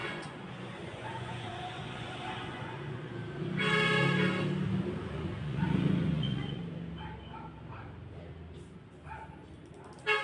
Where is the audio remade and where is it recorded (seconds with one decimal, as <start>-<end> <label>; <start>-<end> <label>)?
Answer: 0.0-3.2 remade; 3.2-5.0 recorded; 5.0-6.6 remade; 6.6-10.2 recorded

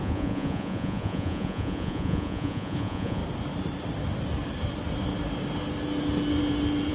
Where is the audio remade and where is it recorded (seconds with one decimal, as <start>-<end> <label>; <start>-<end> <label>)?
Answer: 0.0-3.2 remade; 3.2-6.9 recorded

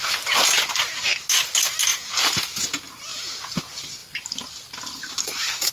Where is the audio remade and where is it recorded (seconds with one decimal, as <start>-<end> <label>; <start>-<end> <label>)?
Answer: 0.0-1.9 recorded; 1.9-2.6 remade; 2.6-3.1 recorded; 3.1-3.6 remade; 3.6-5.7 recorded

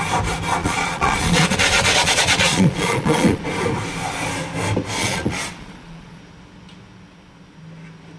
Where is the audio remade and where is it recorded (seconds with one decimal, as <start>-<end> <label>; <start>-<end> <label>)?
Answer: 0.0-0.6 recorded; 0.6-3.4 remade; 3.4-5.0 recorded; 5.0-6.2 remade; 6.2-8.2 recorded

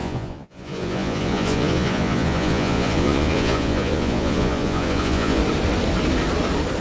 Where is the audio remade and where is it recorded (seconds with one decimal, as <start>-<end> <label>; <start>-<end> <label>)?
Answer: 0.0-5.4 remade; 5.4-6.8 recorded